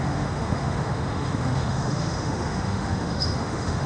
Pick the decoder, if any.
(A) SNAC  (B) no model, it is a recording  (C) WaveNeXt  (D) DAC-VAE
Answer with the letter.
D